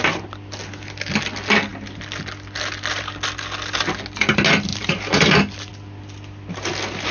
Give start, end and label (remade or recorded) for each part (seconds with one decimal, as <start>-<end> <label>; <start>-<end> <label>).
0.0-4.7 recorded; 4.7-5.3 remade; 5.3-7.1 recorded